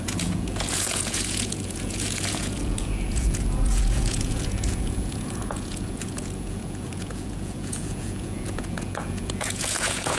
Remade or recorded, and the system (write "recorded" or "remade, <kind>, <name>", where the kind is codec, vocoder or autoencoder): remade, vocoder, Vocos